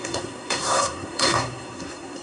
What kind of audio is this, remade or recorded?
remade